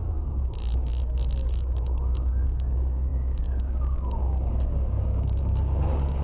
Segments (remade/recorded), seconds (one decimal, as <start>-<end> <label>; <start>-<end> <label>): 0.0-6.2 remade